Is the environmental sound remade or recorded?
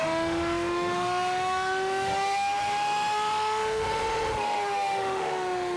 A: remade